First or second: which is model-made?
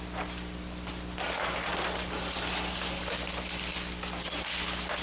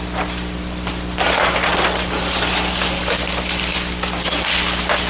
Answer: second